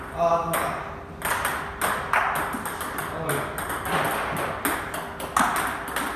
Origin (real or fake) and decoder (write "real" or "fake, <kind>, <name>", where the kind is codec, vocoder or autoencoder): real